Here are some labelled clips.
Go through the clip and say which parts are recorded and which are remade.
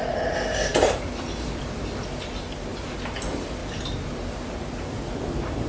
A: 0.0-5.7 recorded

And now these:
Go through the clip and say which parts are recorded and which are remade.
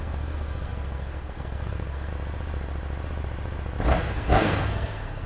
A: 0.0-2.1 remade; 2.1-4.0 recorded; 4.0-5.3 remade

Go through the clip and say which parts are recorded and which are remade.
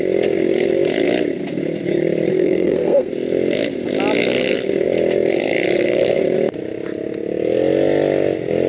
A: 0.0-2.3 recorded; 2.3-3.1 remade; 3.1-8.7 recorded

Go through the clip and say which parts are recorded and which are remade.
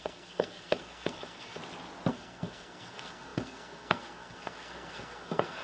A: 0.0-1.6 remade; 1.6-2.1 recorded; 2.1-5.6 remade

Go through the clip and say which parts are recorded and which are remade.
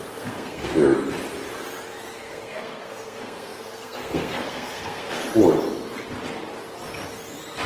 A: 0.0-0.7 remade; 0.7-2.2 recorded; 2.2-5.2 remade; 5.2-7.7 recorded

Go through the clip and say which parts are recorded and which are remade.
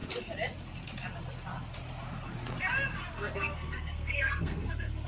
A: 0.0-3.1 recorded; 3.1-5.1 remade